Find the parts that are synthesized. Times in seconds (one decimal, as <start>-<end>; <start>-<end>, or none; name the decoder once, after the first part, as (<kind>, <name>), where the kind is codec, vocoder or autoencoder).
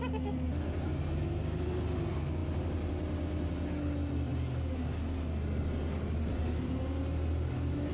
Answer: none